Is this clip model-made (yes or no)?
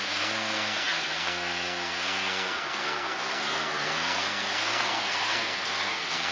yes